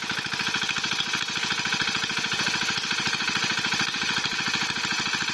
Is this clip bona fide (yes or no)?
yes